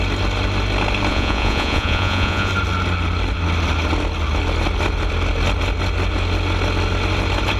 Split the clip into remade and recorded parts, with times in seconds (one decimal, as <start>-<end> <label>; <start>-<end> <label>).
0.0-1.1 recorded; 1.1-2.5 remade; 2.5-7.6 recorded